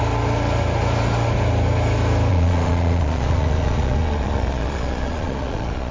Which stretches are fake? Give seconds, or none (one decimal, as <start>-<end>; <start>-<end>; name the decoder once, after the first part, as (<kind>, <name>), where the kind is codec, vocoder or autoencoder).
2.3-5.9 (vocoder, Vocos)